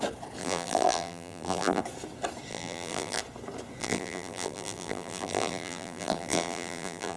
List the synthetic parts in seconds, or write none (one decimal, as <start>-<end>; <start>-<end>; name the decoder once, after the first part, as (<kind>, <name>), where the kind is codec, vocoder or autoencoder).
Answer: 0.4-1.8 (vocoder, BigVGAN v2); 2.5-3.2; 3.8-7.2